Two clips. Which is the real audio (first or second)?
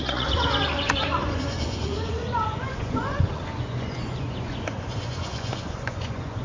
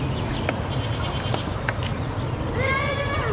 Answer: second